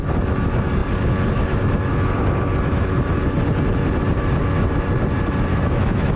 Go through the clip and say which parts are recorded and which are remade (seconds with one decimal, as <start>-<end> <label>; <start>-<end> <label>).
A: 0.0-5.5 recorded; 5.5-6.2 remade